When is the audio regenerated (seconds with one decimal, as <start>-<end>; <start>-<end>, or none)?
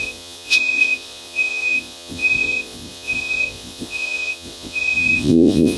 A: 0.0-5.8